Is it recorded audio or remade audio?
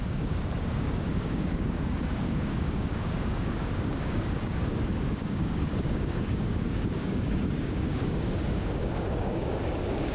remade